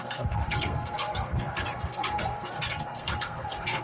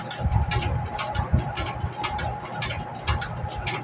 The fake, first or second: first